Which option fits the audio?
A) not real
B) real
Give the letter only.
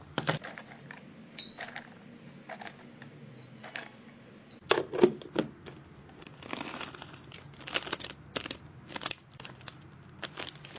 B